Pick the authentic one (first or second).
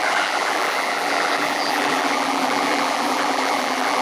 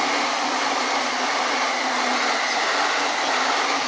second